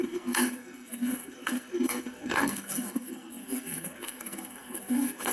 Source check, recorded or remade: remade